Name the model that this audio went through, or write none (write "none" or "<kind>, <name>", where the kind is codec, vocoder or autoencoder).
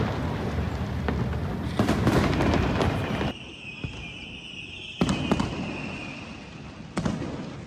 none